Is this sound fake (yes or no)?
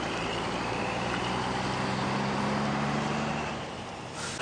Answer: no